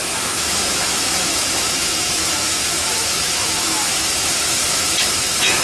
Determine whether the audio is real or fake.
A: fake